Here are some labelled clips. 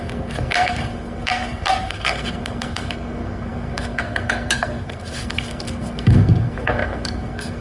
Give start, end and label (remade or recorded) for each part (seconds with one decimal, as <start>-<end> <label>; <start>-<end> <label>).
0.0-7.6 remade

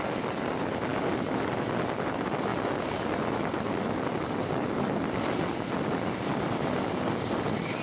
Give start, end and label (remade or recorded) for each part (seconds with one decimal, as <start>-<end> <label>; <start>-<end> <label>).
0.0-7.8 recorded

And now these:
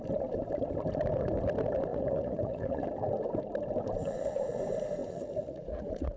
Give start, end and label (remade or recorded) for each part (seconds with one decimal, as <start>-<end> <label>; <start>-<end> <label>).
0.0-1.9 recorded; 1.9-2.8 remade; 2.8-4.0 recorded; 4.0-4.6 remade; 4.6-5.0 recorded; 5.0-6.2 remade

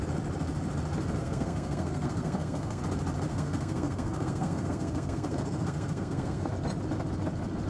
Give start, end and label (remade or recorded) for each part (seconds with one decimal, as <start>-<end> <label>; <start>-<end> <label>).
0.0-1.2 recorded; 1.2-2.8 remade; 2.8-3.3 recorded; 3.3-6.5 remade; 6.5-7.7 recorded

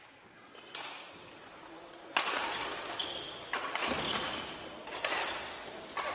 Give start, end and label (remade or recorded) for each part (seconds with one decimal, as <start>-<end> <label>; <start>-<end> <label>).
0.0-6.1 recorded